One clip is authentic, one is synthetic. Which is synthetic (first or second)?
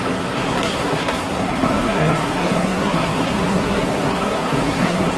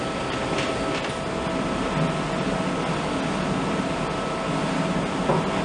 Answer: first